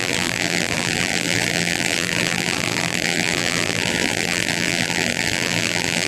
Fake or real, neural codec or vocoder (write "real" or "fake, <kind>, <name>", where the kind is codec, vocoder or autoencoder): fake, vocoder, BigVGAN v2